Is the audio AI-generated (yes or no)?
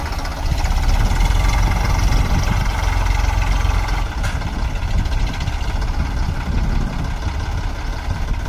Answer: no